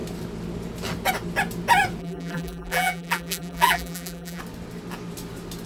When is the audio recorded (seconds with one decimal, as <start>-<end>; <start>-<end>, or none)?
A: 0.0-2.0; 4.4-5.7

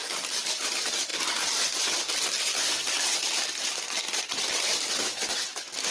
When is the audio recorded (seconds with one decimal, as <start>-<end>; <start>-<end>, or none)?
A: 1.1-1.6

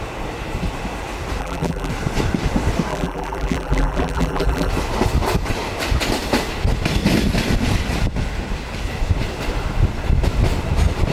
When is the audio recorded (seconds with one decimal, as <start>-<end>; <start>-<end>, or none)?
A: 0.0-1.4; 1.9-2.9; 4.7-11.1

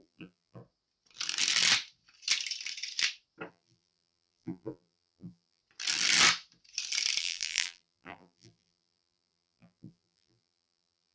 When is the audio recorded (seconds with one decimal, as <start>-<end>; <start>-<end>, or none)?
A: 0.6-3.5; 5.6-7.2

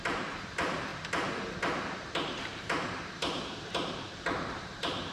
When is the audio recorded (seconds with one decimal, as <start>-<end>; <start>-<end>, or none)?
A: 0.9-1.6